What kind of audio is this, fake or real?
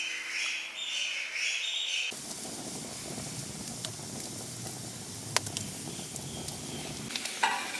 real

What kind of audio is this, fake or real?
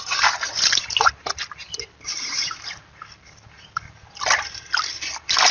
real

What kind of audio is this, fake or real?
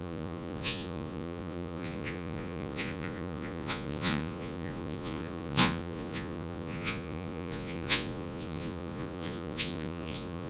fake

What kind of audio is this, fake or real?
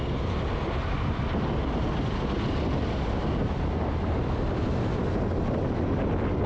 real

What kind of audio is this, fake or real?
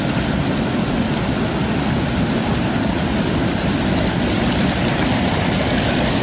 real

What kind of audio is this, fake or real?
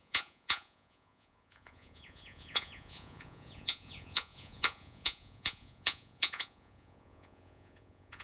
fake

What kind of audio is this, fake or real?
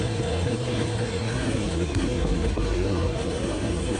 fake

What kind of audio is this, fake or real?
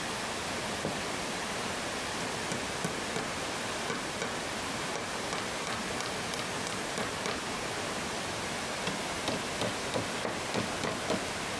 real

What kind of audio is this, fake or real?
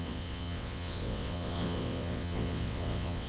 fake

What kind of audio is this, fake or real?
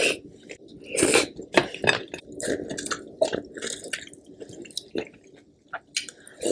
real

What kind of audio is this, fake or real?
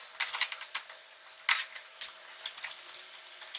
real